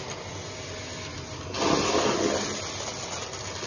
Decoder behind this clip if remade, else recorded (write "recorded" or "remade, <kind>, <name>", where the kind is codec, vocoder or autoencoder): recorded